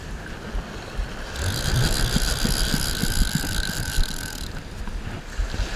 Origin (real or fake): real